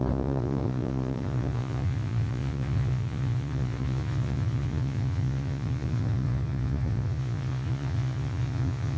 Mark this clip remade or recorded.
remade